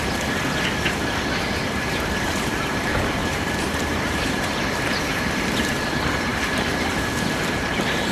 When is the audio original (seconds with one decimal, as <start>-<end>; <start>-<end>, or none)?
0.0-3.2; 5.4-6.3

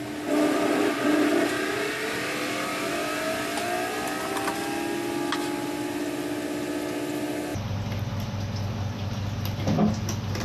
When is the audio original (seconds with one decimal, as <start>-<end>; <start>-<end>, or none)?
0.0-7.5; 9.6-10.4